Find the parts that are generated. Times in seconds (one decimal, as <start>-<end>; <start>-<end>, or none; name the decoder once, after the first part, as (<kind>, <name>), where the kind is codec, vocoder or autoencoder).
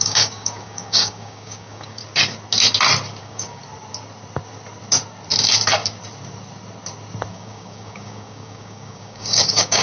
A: 0.0-2.0 (codec, DAC); 3.2-3.6; 7.3-9.8